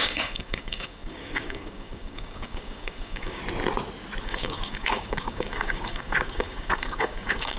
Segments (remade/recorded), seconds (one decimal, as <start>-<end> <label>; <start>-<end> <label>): 0.0-3.4 remade; 3.4-4.2 recorded; 4.2-7.6 remade